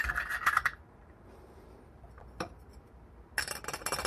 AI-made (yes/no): no